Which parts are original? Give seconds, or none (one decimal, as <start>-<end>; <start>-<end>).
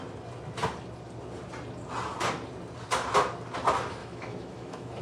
0.0-4.0